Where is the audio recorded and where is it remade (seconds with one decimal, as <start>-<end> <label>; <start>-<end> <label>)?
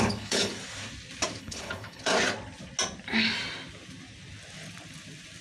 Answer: 0.0-0.5 remade; 0.5-1.4 recorded; 1.4-2.1 remade; 2.1-5.4 recorded